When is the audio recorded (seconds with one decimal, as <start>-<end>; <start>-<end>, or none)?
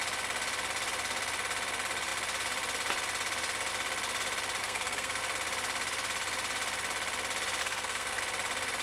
0.0-4.6; 5.2-7.6; 8.2-8.8